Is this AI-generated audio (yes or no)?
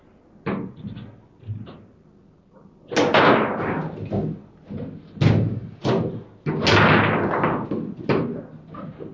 no